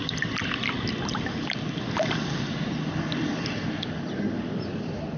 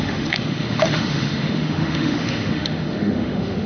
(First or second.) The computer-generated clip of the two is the second